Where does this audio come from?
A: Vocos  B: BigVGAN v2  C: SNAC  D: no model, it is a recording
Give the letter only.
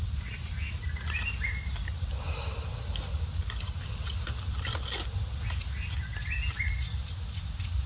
D